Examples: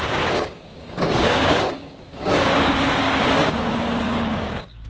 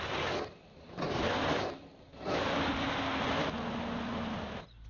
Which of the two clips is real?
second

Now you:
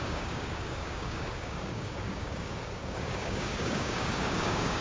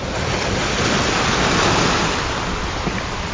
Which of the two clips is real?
second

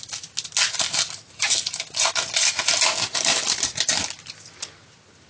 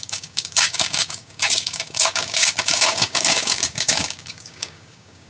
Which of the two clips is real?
first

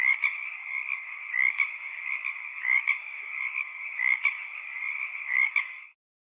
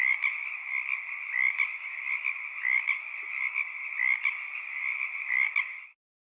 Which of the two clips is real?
second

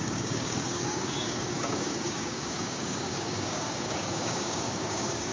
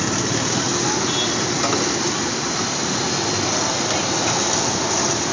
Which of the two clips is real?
second